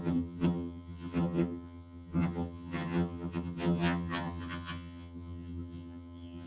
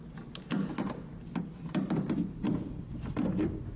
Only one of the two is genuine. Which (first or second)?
second